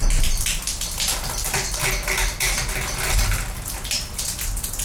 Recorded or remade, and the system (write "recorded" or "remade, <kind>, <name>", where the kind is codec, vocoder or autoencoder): remade, vocoder, BigVGAN v2